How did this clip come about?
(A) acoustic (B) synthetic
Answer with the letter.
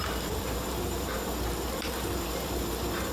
B